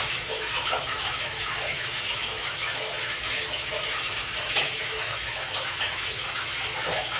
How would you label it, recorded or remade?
remade